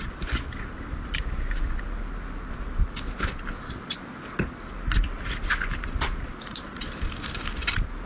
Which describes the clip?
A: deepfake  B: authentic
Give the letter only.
B